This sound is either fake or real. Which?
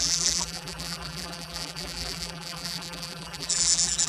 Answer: fake